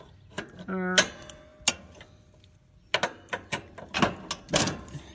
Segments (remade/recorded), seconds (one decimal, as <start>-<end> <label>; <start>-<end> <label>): 0.0-5.1 recorded

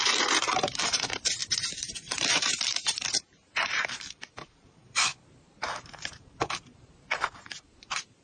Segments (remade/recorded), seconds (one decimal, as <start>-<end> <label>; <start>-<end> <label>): 0.0-8.2 remade

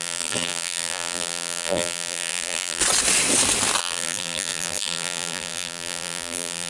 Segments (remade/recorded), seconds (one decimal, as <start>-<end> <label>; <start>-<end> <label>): 0.0-2.8 remade; 2.8-3.8 recorded; 3.8-6.7 remade

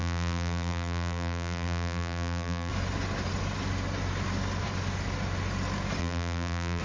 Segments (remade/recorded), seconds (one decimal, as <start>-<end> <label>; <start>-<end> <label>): 0.0-2.7 remade; 2.7-6.0 recorded; 6.0-6.8 remade